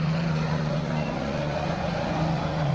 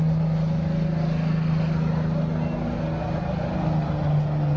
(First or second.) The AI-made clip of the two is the first